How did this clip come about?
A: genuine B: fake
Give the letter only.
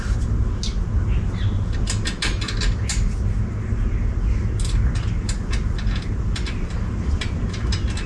A